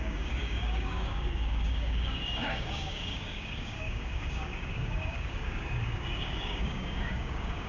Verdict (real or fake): fake